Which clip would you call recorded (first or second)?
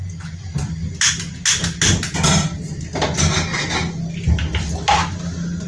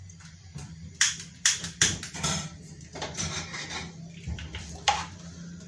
first